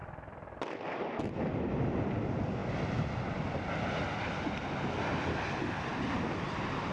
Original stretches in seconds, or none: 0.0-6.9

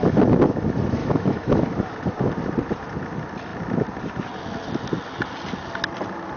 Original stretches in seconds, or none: 0.0-1.0; 1.6-6.4